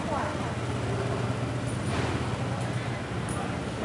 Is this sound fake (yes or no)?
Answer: no